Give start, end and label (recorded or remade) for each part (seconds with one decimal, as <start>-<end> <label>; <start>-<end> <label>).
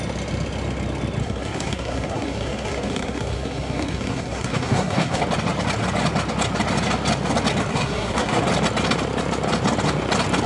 0.0-1.2 recorded; 1.2-5.2 remade; 5.2-7.7 recorded; 7.7-8.4 remade; 8.4-10.5 recorded